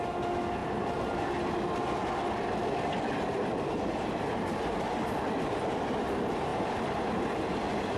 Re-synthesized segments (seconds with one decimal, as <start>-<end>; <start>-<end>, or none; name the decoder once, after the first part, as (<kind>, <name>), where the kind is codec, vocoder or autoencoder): none